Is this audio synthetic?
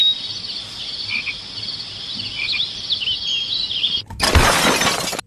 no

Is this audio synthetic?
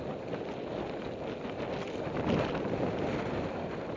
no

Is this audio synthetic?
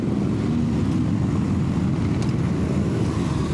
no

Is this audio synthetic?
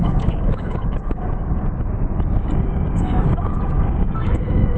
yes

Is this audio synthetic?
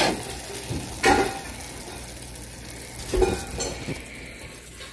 no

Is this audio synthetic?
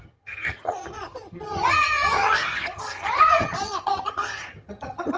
yes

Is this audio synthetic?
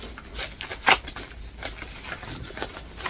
no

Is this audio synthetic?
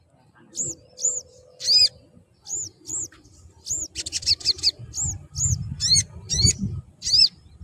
no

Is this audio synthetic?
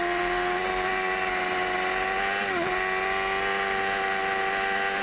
no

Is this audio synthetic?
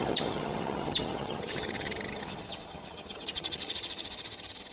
yes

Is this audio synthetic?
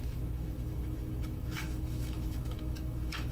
yes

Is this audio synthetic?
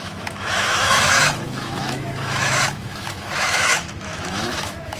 yes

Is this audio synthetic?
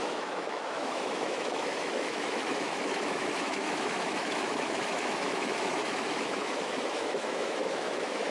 yes